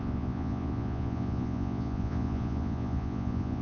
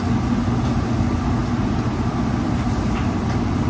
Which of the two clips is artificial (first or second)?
first